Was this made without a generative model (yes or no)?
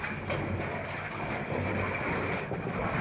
yes